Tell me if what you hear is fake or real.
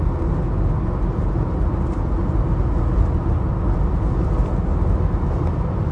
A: real